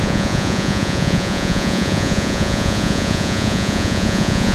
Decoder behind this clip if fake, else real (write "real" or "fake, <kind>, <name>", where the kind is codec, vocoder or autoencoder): fake, vocoder, Vocos